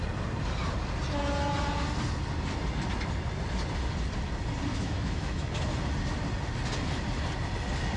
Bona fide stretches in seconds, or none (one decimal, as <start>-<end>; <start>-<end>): 0.0-4.7; 5.5-8.0

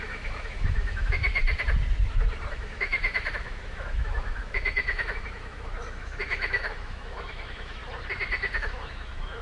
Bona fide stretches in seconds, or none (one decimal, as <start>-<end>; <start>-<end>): 1.4-2.5; 7.8-8.6

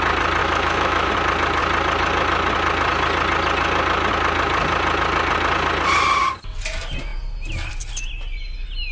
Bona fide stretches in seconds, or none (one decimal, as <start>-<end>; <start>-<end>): 0.0-0.4; 1.1-8.9

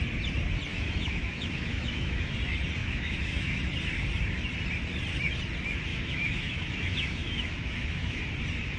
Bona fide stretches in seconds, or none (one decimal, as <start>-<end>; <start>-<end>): 0.0-0.7; 2.4-2.8; 3.6-5.9; 8.2-8.8

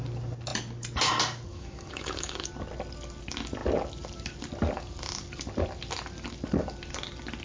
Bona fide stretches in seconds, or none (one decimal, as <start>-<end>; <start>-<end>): 0.0-1.5; 2.5-7.4